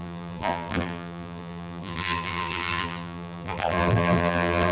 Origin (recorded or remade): remade